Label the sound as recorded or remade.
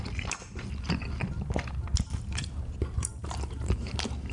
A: remade